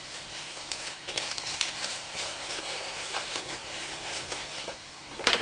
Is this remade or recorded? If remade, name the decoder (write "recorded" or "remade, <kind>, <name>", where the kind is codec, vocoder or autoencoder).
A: remade, codec, SNAC